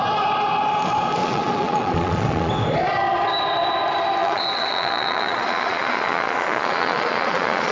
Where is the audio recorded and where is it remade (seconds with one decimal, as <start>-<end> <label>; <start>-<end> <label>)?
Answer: 0.0-1.2 recorded; 1.2-2.5 remade; 2.5-4.2 recorded; 4.2-7.7 remade